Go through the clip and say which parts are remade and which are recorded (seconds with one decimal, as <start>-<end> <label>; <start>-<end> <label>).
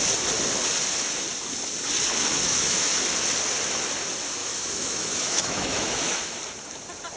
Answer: 0.0-2.3 recorded; 2.3-2.9 remade; 2.9-4.4 recorded; 4.4-6.4 remade; 6.4-7.2 recorded